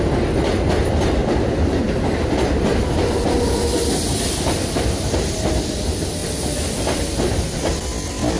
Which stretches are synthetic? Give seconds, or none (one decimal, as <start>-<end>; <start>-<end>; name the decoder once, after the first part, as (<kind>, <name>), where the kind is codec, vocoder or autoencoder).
1.2-5.6 (vocoder, BigVGAN v2); 6.2-7.0